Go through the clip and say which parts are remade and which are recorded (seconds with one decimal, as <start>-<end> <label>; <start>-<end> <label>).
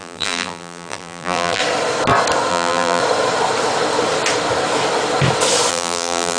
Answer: 0.0-1.6 remade; 1.6-2.5 recorded; 2.5-3.0 remade; 3.0-5.7 recorded; 5.7-6.4 remade